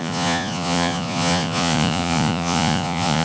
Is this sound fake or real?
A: fake